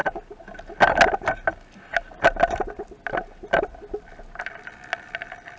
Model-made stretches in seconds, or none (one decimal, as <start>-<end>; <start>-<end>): none